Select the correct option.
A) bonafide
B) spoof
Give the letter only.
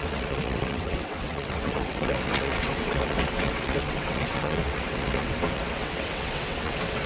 B